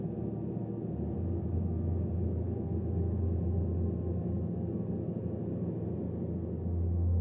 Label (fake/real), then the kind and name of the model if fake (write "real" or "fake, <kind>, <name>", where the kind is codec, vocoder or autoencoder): real